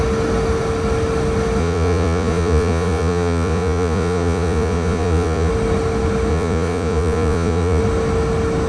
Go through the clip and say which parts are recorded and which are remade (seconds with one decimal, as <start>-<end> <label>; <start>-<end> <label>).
0.0-1.6 recorded; 1.6-5.5 remade; 5.5-6.3 recorded; 6.3-7.8 remade; 7.8-8.7 recorded